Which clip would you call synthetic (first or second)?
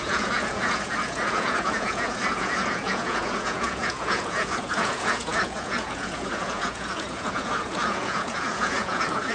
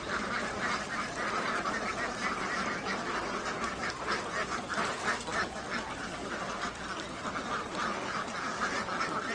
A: first